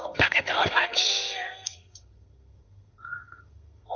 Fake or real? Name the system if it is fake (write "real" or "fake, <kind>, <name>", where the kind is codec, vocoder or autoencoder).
fake, codec, SNAC